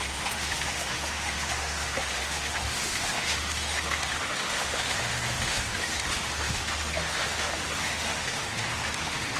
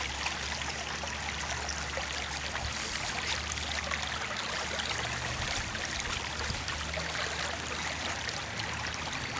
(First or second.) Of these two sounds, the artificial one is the first